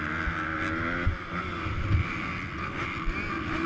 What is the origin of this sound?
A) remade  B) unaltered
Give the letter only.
B